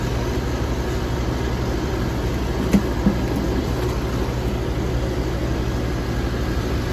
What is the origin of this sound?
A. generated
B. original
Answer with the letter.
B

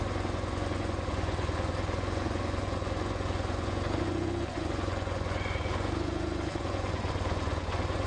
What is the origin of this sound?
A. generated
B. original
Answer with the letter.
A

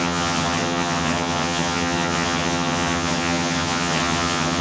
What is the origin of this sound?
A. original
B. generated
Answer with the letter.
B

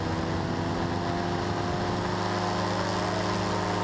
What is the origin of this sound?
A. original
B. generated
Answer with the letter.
A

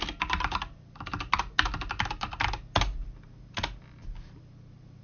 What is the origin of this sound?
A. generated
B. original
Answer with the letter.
B